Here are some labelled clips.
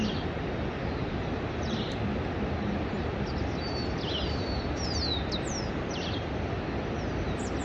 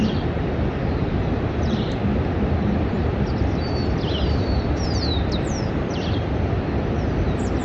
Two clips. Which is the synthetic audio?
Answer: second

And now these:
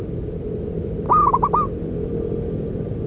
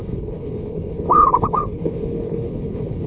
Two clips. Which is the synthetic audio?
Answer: second